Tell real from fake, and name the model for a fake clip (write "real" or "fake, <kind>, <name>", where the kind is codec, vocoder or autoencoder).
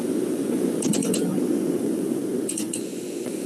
fake, vocoder, Vocos